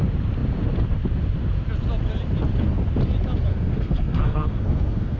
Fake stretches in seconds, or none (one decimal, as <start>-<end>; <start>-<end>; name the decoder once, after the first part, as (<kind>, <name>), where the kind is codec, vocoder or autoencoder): 3.5-5.2 (codec, SNAC)

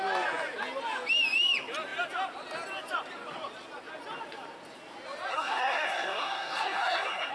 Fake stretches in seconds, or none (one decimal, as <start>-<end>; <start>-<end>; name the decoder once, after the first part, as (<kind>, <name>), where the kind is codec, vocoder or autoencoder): 5.3-7.3 (codec, SNAC)

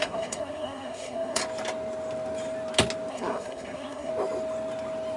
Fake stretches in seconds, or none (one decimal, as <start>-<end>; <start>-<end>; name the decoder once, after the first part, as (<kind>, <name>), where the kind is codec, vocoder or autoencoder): 0.0-1.4 (codec, SNAC); 3.1-4.1